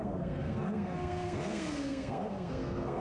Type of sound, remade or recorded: remade